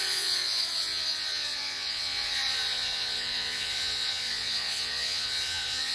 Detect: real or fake fake